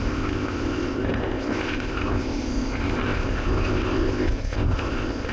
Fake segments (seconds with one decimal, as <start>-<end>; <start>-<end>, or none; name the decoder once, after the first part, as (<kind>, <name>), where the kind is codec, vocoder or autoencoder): 0.0-5.3 (codec, ZipCodec)